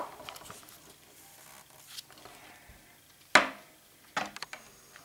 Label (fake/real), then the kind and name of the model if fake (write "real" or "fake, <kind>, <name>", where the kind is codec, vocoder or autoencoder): real